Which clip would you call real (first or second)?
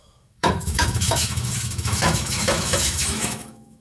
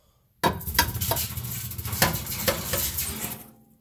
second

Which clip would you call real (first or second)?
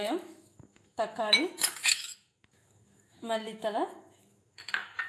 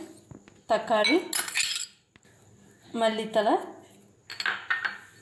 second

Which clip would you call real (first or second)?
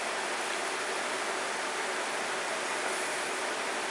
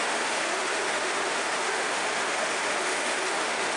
first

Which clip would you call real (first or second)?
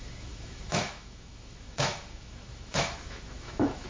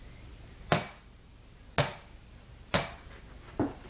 second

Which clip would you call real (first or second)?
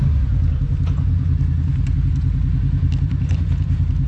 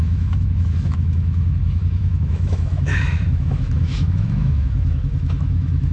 first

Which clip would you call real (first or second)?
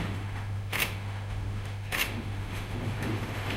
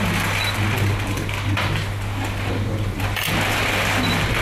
second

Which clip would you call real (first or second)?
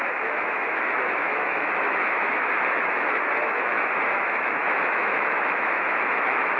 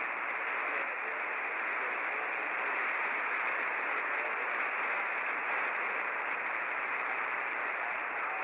second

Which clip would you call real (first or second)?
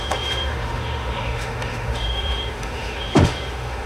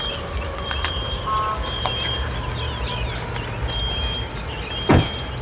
second